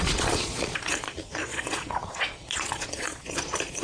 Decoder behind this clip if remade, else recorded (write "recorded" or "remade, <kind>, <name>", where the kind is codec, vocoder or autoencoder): remade, vocoder, Vocos